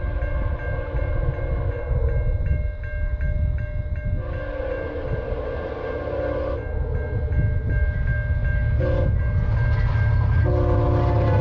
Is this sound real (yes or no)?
yes